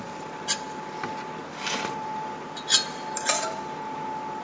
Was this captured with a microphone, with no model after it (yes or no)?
yes